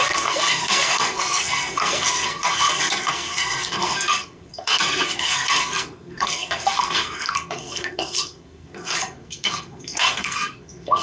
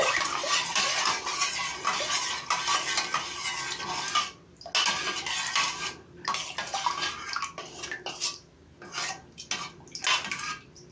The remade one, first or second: first